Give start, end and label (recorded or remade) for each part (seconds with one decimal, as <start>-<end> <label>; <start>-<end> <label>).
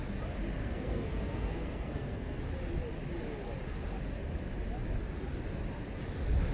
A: 0.0-0.6 recorded; 0.6-2.4 remade; 2.4-6.5 recorded